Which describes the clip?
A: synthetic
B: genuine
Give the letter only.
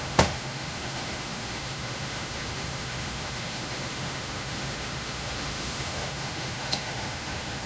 A